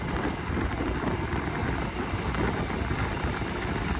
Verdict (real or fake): real